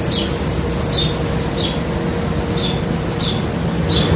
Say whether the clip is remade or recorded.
recorded